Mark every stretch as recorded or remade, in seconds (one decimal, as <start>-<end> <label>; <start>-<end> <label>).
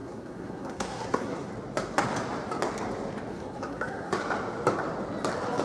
0.0-1.5 remade; 1.5-3.3 recorded; 3.3-4.1 remade; 4.1-5.6 recorded